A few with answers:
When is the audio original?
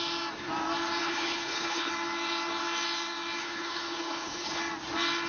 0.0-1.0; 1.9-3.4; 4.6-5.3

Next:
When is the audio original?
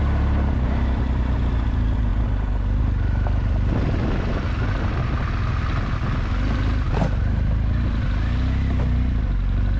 0.0-9.8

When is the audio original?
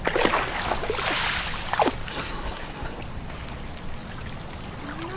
0.0-2.1; 3.0-5.2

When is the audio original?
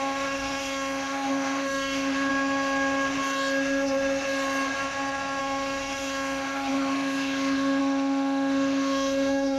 2.3-5.4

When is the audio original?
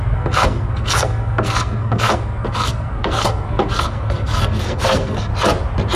5.3-6.0